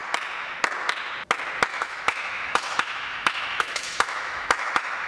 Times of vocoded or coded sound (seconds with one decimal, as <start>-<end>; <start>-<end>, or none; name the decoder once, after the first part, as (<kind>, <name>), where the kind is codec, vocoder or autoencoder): 1.7-5.1 (autoencoder, DAC-VAE)